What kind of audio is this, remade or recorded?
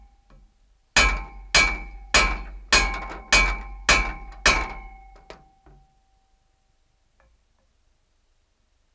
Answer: recorded